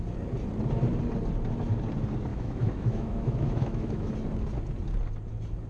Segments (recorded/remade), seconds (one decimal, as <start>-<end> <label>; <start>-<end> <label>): 0.0-2.3 recorded; 2.3-4.1 remade; 4.1-5.7 recorded